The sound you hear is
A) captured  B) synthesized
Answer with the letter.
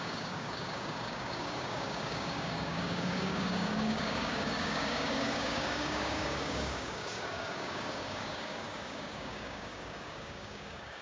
B